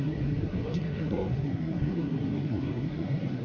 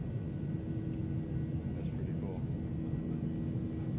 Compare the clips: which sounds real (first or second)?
second